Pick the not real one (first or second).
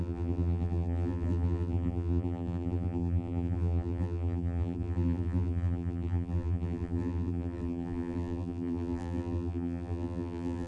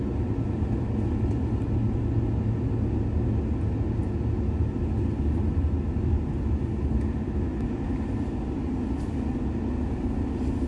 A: first